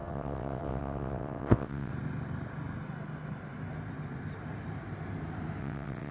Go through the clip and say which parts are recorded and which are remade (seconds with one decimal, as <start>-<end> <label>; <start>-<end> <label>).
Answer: 0.0-1.9 remade; 1.9-5.6 recorded; 5.6-6.1 remade